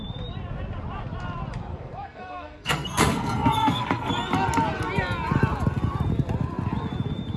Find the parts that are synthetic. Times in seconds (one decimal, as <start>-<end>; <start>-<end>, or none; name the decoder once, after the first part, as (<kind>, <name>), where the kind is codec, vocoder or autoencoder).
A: 1.7-4.1 (codec, SNAC)